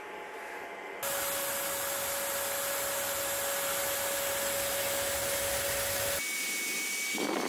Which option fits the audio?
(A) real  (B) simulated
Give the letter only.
A